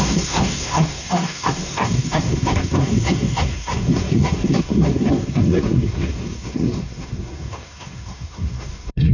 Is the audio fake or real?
fake